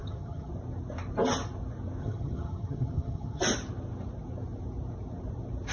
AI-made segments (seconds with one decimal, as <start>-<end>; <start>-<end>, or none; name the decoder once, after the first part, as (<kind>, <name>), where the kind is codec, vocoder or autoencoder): 0.0-0.5 (vocoder, HiFi-GAN); 2.0-3.4